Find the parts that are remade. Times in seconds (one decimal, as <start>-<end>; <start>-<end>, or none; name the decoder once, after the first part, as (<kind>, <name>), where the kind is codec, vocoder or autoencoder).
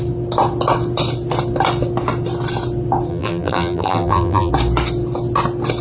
3.1-4.5 (vocoder, BigVGAN v2)